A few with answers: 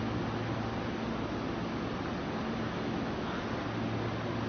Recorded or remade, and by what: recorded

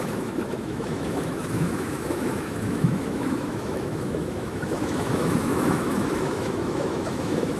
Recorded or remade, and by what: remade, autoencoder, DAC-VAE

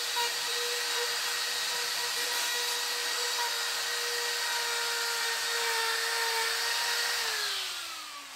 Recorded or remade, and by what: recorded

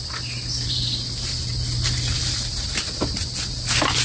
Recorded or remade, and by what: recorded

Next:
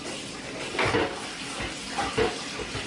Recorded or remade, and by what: recorded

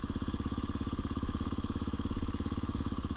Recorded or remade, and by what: remade, autoencoder, DAC-VAE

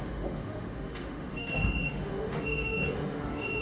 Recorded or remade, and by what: remade, autoencoder, DAC-VAE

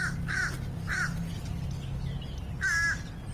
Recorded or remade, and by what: recorded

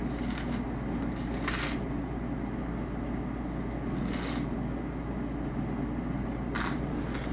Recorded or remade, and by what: recorded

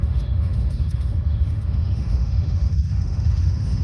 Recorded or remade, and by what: remade, autoencoder, DAC-VAE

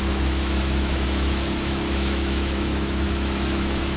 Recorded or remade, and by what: remade, autoencoder, DAC-VAE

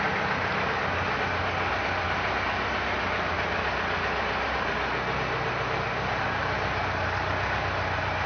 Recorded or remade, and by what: recorded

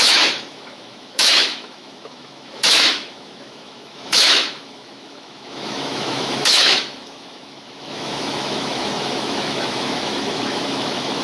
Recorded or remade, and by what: remade, autoencoder, DAC-VAE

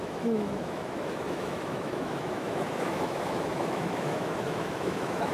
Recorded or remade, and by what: remade, autoencoder, DAC-VAE